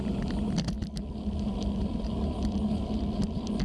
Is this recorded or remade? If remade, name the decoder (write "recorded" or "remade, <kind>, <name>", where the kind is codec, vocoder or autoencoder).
recorded